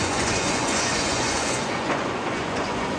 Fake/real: fake